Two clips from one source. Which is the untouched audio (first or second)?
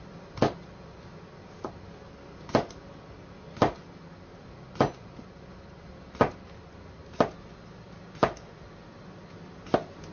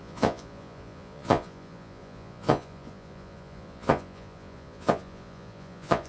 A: first